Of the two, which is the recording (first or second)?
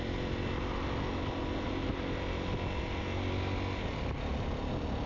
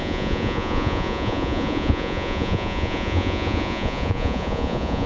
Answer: first